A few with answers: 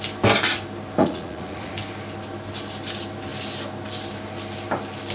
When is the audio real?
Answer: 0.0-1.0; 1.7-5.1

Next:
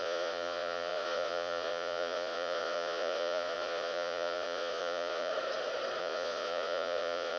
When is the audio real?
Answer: 5.3-6.0

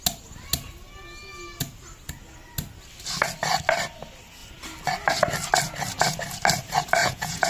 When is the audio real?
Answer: 0.0-7.0

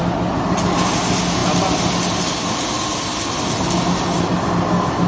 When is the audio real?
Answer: 0.0-5.1

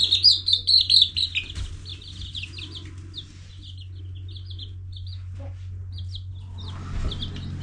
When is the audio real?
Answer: 0.0-7.6

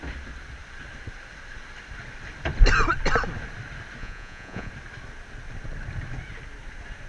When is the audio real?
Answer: 0.0-4.0; 4.7-7.1

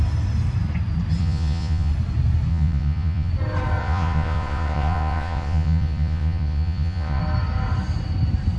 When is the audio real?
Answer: 0.0-1.2; 1.9-2.5; 3.3-3.8; 7.2-8.6